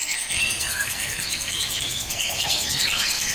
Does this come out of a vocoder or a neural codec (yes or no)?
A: yes